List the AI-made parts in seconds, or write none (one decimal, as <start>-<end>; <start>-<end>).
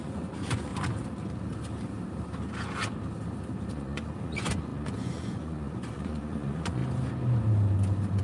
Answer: 0.0-0.7; 3.7-6.8